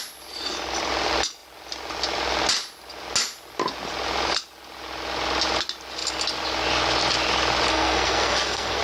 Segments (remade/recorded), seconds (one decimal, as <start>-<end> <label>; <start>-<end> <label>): 0.0-7.7 recorded; 7.7-8.8 remade